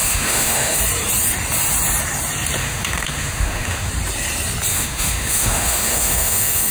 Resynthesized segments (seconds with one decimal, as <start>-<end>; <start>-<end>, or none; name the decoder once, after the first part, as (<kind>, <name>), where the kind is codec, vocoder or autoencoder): 0.0-0.8 (autoencoder, DAC-VAE); 2.6-3.9; 4.7-6.7